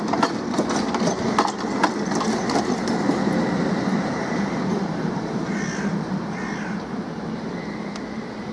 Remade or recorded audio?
recorded